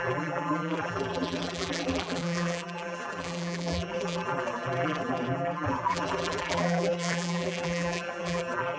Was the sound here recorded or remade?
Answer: remade